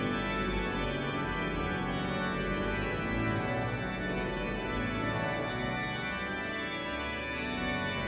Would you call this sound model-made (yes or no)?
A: no